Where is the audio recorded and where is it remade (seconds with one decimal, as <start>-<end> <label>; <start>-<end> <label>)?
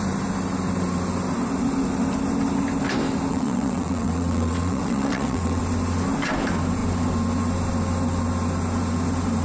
0.0-3.3 recorded; 3.3-5.6 remade; 5.6-9.4 recorded